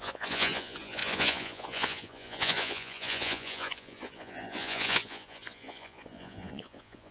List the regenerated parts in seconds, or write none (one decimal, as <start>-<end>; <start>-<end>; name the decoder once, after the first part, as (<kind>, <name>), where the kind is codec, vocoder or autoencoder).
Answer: 0.0-7.1 (vocoder, Vocos)

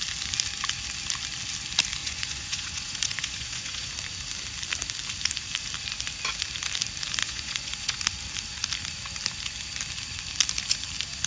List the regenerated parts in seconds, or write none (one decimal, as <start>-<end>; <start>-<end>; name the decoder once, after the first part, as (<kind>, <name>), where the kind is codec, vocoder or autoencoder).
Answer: 2.0-3.9 (vocoder, Vocos); 7.2-8.0